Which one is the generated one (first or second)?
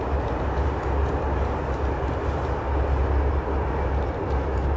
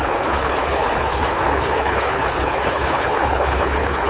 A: second